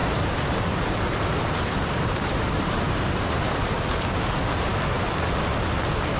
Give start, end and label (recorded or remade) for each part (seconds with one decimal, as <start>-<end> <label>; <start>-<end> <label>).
0.0-3.7 remade; 3.7-6.2 recorded